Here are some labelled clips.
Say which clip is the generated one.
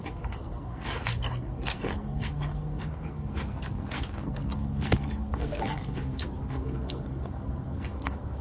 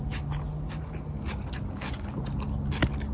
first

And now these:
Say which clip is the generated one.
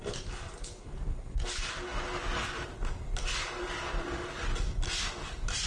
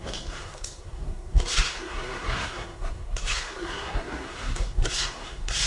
second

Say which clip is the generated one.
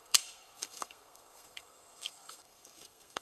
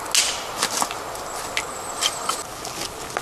first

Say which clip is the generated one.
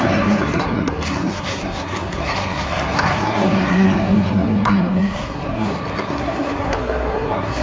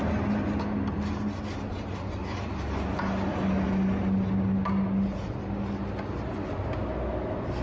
first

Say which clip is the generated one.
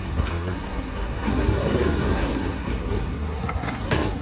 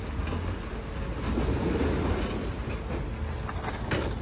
first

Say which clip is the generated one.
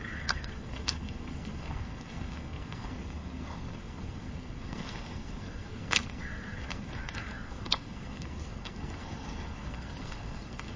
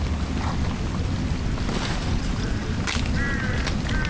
first